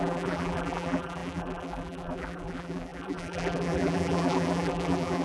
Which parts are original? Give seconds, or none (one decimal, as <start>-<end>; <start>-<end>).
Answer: none